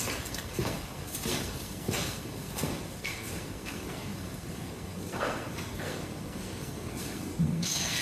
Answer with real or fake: fake